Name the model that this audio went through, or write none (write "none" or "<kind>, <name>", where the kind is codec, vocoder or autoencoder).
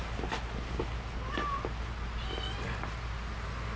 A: none